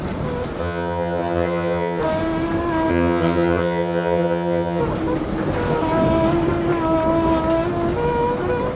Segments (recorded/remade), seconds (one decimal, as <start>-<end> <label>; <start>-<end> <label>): 0.0-0.6 recorded; 0.6-2.0 remade; 2.0-2.9 recorded; 2.9-4.8 remade; 4.8-8.8 recorded